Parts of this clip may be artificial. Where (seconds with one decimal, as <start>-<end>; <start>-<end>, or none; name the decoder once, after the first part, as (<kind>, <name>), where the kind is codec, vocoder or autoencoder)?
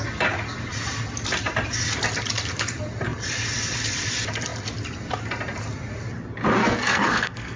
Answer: 6.6-7.6 (codec, SNAC)